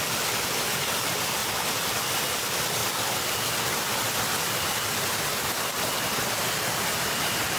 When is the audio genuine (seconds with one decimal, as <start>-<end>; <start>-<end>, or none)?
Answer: 0.0-7.6